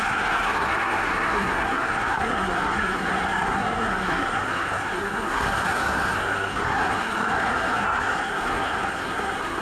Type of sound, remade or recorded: remade